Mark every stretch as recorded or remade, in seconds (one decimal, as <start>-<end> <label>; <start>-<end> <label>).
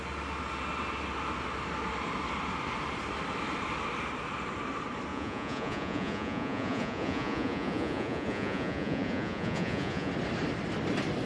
0.0-5.1 recorded; 5.1-10.1 remade; 10.1-11.3 recorded